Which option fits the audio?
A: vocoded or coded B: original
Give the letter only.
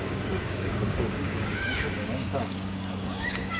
A